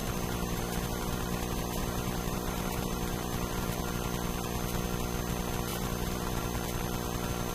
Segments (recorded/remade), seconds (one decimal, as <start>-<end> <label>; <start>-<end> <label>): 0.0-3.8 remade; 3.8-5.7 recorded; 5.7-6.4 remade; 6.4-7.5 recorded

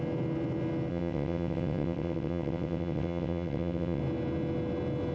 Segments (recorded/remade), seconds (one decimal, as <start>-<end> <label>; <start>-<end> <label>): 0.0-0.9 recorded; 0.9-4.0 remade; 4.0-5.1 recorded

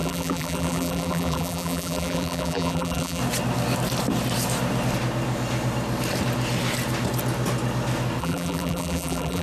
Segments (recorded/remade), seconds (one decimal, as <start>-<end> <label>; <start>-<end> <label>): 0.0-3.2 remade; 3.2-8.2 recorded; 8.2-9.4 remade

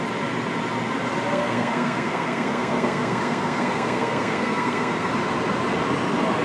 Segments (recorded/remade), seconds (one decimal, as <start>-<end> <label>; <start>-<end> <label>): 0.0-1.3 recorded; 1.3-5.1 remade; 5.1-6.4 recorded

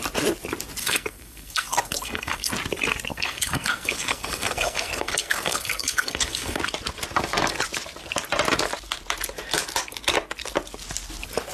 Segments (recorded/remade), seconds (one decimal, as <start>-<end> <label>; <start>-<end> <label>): 0.0-0.8 recorded; 0.8-2.5 remade; 2.5-3.1 recorded; 3.1-6.6 remade; 6.6-11.5 recorded

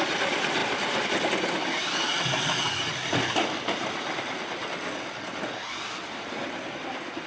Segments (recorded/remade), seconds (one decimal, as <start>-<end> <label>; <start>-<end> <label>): 0.0-7.3 recorded